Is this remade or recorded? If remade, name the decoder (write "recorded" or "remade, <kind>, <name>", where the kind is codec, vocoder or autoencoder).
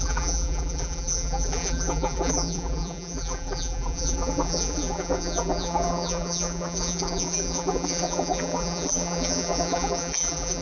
remade, vocoder, BigVGAN v2